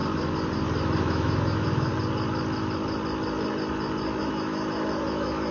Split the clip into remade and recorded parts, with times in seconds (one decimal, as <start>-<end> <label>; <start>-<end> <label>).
0.0-1.0 recorded; 1.0-1.9 remade; 1.9-4.2 recorded; 4.2-5.5 remade